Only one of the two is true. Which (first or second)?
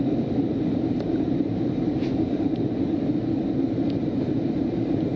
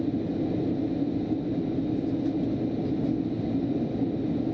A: second